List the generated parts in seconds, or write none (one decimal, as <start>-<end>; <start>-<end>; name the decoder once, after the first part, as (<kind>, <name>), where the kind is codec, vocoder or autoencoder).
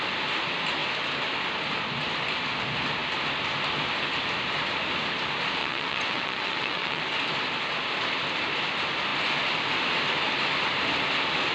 5.6-7.0 (vocoder, WaveNeXt)